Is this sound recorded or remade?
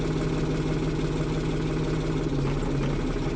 recorded